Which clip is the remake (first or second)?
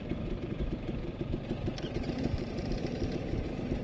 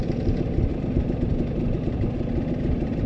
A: first